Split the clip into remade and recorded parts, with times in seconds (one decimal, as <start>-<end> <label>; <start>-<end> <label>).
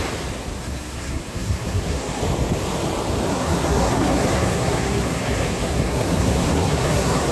0.0-0.6 recorded; 0.6-2.2 remade; 2.2-3.3 recorded; 3.3-7.3 remade